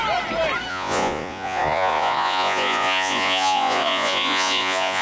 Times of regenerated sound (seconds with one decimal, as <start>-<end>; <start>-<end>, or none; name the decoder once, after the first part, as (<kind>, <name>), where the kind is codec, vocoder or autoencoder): 0.7-5.0 (vocoder, Vocos)